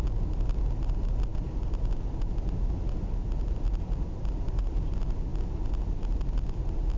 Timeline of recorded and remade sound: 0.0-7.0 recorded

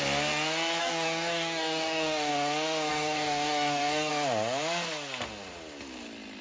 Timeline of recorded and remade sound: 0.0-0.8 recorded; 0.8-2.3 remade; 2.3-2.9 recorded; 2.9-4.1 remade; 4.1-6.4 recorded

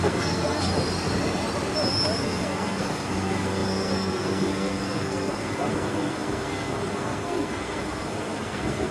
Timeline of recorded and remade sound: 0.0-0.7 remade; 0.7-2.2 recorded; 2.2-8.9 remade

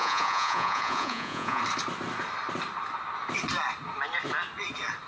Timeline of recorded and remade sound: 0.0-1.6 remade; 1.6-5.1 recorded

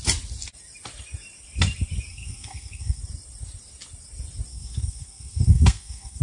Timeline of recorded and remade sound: 0.0-2.1 recorded; 2.1-3.0 remade; 3.0-4.5 recorded; 4.5-6.2 remade

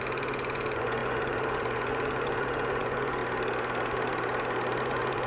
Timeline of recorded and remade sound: 0.0-3.2 remade; 3.2-4.8 recorded; 4.8-5.3 remade